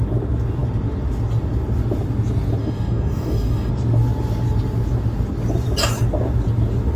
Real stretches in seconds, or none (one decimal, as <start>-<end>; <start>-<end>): 0.0-2.6; 3.7-7.0